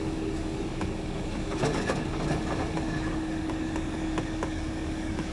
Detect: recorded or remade remade